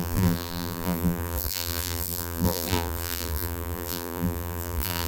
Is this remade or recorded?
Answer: remade